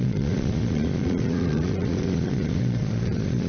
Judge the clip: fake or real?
fake